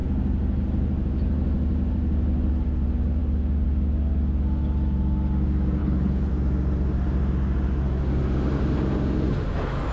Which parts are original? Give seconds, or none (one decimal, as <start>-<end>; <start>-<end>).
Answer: 0.0-5.8; 6.3-9.9